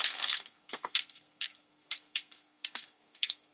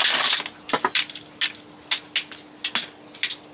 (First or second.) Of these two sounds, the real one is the second